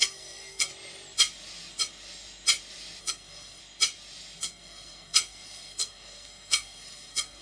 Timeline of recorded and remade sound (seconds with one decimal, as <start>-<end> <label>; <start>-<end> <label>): 0.0-0.7 remade; 0.7-3.0 recorded; 3.0-3.6 remade; 3.6-4.4 recorded; 4.4-7.4 remade